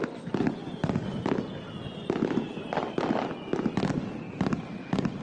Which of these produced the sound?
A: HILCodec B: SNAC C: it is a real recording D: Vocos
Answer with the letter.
C